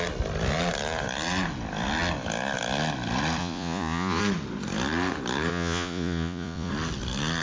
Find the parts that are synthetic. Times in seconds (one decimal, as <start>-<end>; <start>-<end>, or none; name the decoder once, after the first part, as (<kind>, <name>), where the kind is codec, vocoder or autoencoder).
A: 3.4-4.2 (vocoder, Vocos); 5.5-6.7